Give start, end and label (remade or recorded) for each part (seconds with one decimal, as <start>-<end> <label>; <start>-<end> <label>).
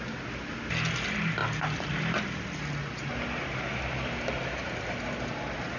0.0-5.8 recorded